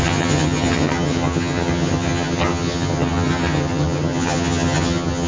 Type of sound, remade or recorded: remade